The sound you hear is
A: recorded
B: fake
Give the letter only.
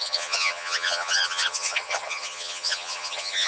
B